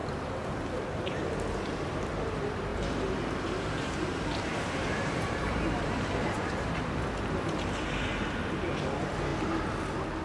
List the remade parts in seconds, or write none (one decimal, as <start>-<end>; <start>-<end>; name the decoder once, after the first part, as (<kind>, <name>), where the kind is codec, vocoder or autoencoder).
2.7-6.9 (vocoder, BigVGAN v2)